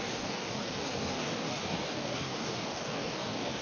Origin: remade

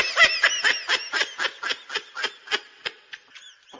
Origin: recorded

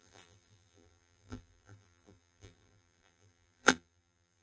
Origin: remade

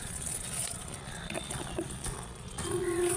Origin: remade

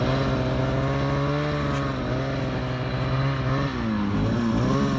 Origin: recorded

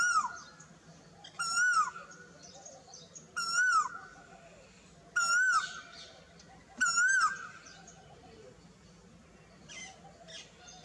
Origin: recorded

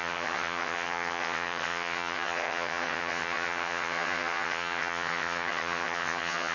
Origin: remade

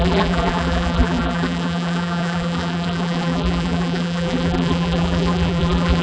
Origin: remade